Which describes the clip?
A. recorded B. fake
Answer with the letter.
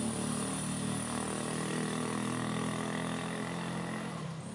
A